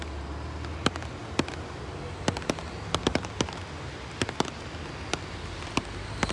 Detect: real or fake real